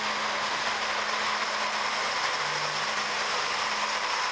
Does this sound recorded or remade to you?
recorded